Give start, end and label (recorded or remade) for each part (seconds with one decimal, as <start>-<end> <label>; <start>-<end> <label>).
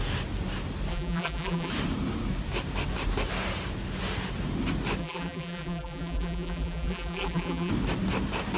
0.0-0.9 recorded; 0.9-1.7 remade; 1.7-5.0 recorded; 5.0-7.7 remade; 7.7-8.6 recorded